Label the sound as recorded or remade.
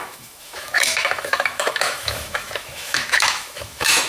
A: remade